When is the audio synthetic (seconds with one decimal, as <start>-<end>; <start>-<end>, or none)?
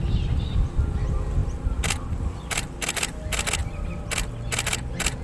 none